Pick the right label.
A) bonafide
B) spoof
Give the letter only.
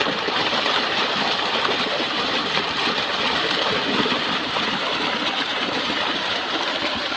B